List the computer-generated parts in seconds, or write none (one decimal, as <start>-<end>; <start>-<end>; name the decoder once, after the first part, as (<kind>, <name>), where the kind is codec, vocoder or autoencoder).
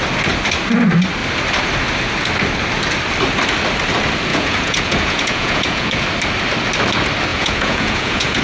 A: 4.3-6.0 (vocoder, Vocos); 7.3-8.4